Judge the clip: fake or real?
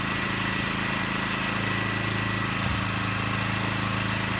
real